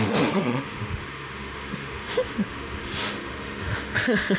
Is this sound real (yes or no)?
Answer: no